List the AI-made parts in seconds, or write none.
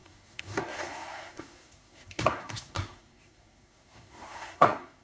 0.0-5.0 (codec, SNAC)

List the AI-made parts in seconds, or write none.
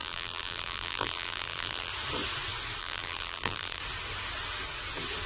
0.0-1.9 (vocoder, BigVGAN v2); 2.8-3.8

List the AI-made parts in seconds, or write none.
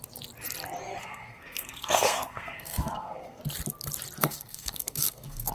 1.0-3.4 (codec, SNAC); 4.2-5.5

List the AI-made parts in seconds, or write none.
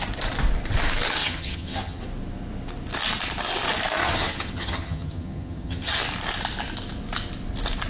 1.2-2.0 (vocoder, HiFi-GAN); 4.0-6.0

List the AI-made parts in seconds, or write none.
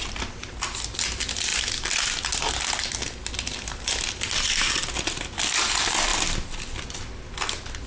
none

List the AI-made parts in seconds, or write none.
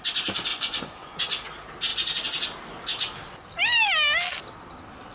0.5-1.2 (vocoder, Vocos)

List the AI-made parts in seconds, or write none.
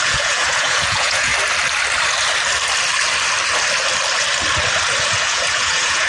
0.0-1.3 (vocoder, Vocos); 5.0-6.1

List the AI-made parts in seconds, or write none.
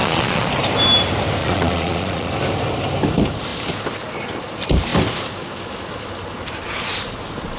0.0-0.5 (vocoder, Vocos); 1.4-2.3